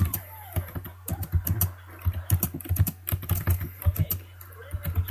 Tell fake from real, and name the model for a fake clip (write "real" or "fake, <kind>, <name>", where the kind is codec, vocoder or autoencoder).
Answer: real